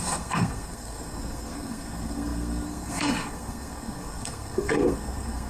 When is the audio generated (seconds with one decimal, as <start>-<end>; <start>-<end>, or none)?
0.0-5.5

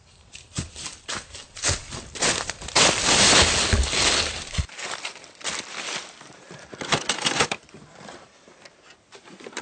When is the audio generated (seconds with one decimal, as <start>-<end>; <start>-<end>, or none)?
0.0-1.8; 6.0-9.6

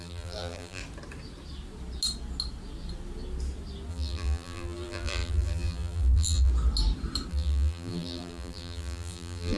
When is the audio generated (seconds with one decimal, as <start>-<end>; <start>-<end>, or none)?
0.0-0.8; 3.9-6.5; 7.3-9.6

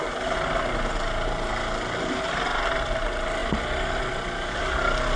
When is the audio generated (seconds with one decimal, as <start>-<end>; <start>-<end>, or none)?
none

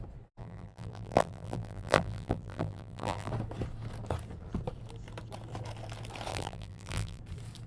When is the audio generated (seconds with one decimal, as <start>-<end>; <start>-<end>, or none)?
0.4-3.3; 6.3-7.2